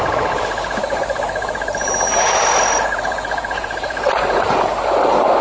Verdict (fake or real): fake